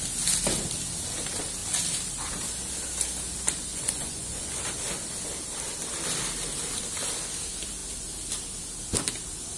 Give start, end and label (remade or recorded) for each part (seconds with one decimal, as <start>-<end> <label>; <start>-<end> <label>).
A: 0.0-3.7 recorded; 3.7-4.6 remade; 4.6-9.6 recorded